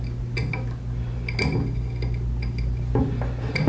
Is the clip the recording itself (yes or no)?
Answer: yes